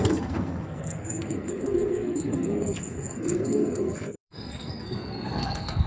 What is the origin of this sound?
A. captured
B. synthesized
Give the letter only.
B